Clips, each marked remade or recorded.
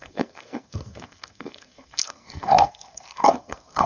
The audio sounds remade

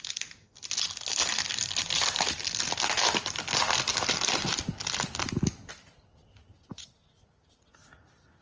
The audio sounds recorded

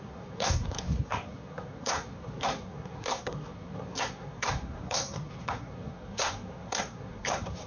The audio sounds remade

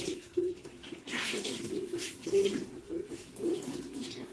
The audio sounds remade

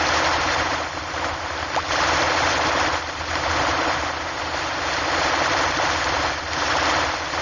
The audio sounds recorded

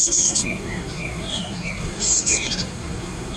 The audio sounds remade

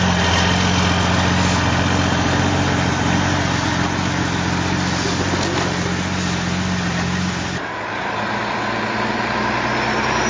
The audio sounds recorded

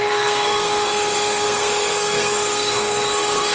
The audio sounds remade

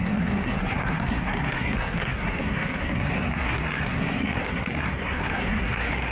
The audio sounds remade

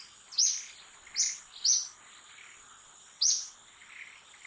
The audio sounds recorded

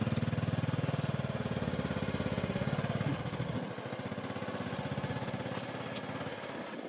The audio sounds recorded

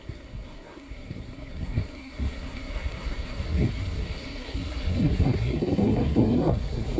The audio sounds remade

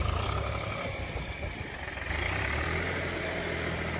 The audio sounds recorded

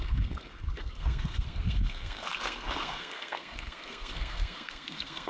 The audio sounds remade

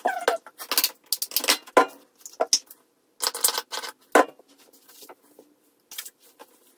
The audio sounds recorded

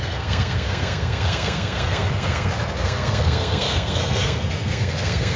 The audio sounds remade